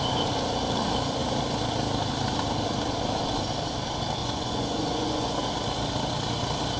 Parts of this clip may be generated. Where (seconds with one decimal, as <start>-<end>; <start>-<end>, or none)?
4.2-5.5